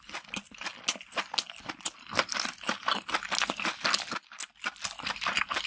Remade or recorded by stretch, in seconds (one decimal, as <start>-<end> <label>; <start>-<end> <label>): 0.0-5.7 recorded